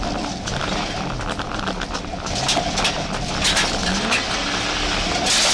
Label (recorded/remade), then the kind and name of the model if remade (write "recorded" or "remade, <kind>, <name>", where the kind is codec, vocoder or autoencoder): recorded